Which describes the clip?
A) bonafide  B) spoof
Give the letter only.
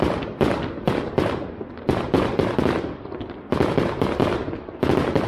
A